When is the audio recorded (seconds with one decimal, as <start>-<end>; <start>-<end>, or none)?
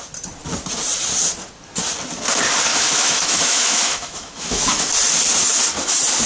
0.0-2.7; 4.9-6.3